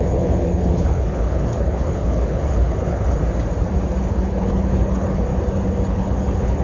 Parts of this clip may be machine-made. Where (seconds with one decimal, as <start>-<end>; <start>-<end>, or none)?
0.0-3.2; 4.0-5.3; 5.9-6.6